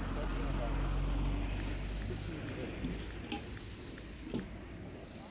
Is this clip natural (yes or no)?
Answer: yes